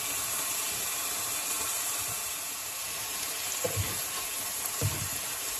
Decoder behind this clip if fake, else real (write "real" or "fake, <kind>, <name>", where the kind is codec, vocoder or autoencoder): fake, vocoder, BigVGAN v2